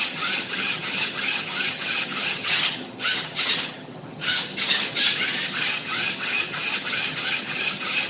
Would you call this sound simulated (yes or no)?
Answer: yes